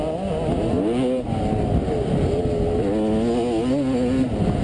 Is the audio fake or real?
real